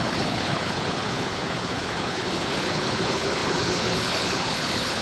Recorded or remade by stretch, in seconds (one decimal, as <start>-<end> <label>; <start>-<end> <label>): 0.0-5.0 remade